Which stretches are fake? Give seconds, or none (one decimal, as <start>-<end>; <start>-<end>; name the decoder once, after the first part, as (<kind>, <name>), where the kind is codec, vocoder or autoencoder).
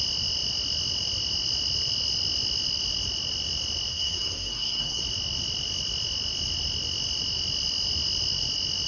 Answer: 3.9-5.0 (codec, SNAC)